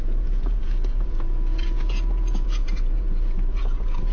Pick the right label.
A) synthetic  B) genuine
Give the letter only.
A